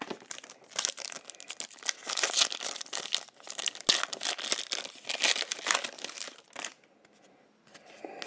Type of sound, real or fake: real